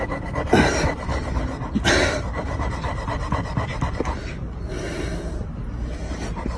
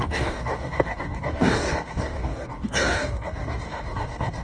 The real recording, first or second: first